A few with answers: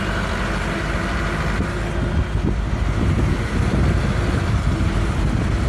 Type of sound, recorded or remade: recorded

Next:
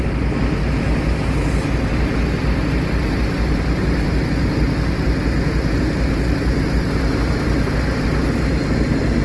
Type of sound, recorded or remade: recorded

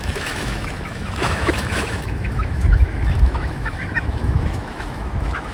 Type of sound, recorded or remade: remade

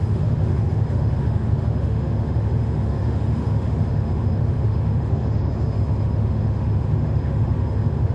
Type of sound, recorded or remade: remade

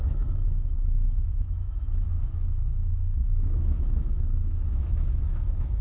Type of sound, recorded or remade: remade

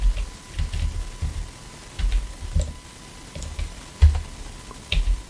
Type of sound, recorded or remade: recorded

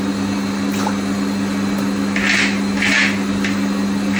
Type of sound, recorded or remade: recorded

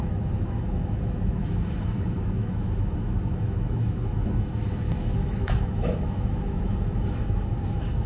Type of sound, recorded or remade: remade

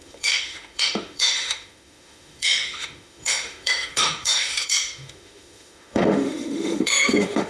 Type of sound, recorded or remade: remade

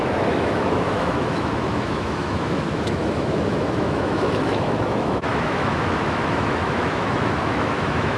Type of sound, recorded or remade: remade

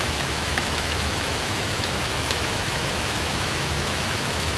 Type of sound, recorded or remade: remade